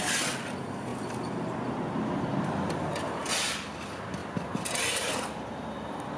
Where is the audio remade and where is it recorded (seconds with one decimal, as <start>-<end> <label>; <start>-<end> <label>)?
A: 0.0-6.2 recorded